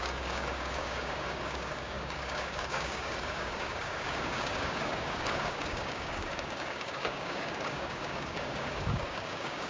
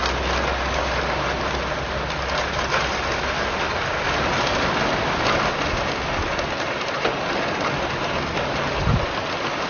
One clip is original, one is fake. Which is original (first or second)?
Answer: second